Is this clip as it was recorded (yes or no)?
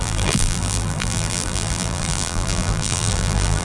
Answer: no